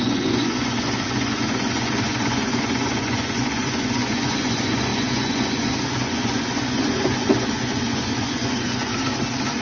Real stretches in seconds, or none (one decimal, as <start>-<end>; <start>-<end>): 8.9-9.6